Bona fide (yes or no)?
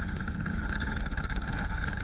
no